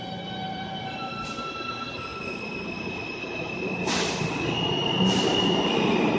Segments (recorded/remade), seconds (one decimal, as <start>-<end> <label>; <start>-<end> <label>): 0.0-2.1 remade; 2.1-4.6 recorded; 4.6-6.2 remade